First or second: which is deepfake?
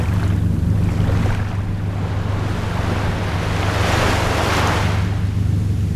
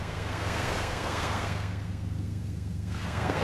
second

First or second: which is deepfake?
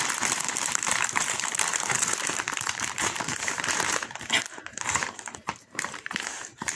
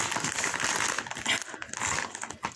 first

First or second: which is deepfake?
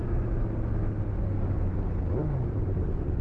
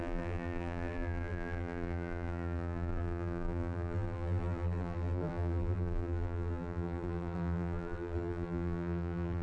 second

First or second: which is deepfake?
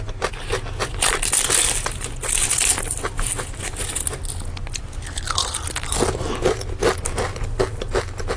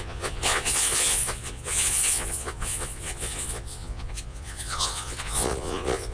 second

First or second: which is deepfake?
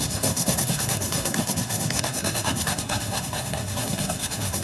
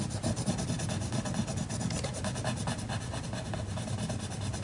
first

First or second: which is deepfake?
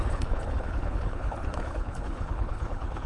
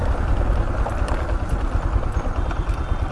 first